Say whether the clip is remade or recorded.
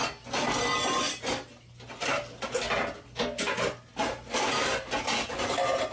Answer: recorded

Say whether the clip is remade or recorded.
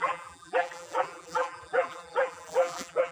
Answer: remade